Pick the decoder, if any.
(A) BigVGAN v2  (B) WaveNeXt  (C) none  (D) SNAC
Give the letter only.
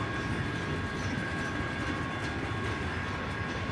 C